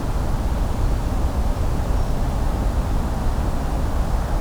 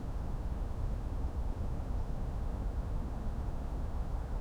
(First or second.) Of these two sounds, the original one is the first